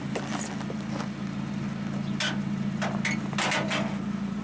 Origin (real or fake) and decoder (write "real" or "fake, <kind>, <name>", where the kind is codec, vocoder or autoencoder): real